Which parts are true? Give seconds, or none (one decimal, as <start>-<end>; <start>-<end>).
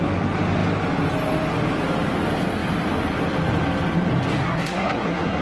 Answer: 0.0-4.4